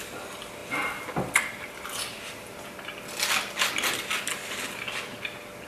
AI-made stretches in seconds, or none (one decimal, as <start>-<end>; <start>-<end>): none